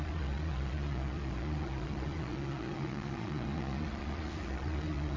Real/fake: fake